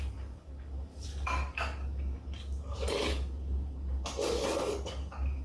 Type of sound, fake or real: fake